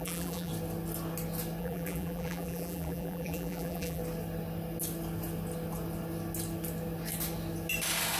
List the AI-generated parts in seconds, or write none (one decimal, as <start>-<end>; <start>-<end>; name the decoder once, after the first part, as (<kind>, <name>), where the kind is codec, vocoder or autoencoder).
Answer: 0.0-0.5 (vocoder, BigVGAN v2); 1.6-4.0